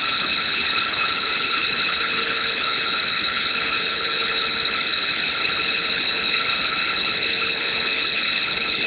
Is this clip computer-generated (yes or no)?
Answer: yes